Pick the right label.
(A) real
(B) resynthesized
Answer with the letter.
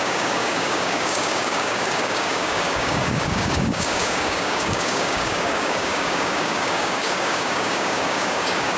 B